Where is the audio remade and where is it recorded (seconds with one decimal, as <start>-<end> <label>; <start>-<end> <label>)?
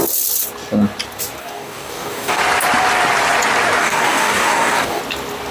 0.0-1.4 recorded; 1.4-2.4 remade; 2.4-3.8 recorded; 3.8-5.0 remade; 5.0-5.5 recorded